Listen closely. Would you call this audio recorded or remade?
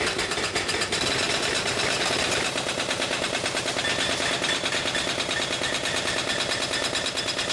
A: recorded